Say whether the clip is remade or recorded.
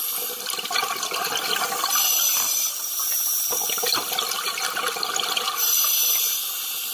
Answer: recorded